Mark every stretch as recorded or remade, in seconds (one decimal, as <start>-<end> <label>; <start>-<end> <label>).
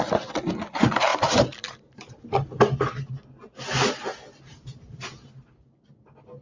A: 0.0-1.1 recorded; 1.1-3.1 remade; 3.1-4.5 recorded; 4.5-5.5 remade; 5.5-6.4 recorded